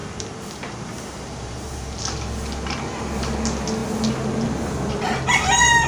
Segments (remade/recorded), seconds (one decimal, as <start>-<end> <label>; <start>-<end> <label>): 0.0-2.0 remade; 2.0-5.9 recorded